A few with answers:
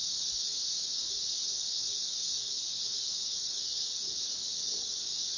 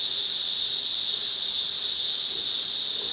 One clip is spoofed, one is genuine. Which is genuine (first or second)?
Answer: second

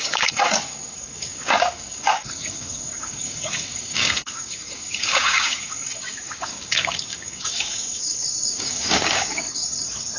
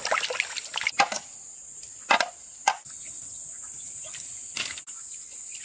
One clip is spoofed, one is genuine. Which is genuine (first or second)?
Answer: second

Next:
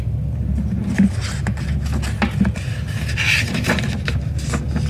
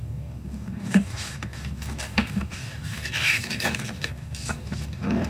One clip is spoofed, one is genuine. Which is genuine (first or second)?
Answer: first